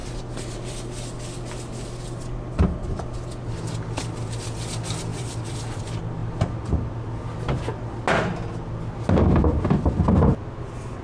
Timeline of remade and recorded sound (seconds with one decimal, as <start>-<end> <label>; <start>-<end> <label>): 0.0-5.1 recorded; 5.1-5.8 remade; 5.8-11.0 recorded